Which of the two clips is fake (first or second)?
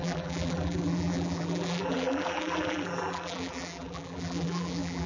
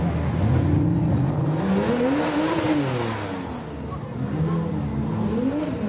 first